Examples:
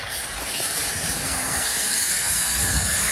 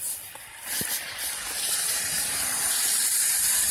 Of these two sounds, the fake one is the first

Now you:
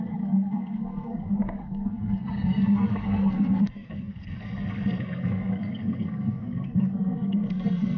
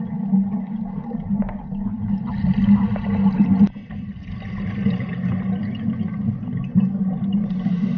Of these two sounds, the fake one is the first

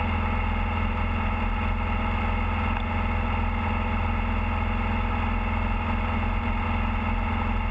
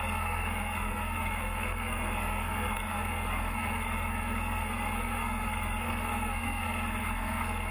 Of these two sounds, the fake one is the second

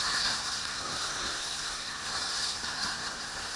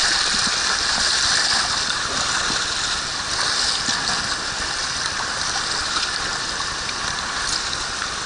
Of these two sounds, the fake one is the first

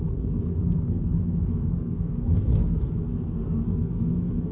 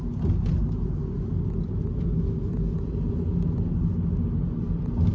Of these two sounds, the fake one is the first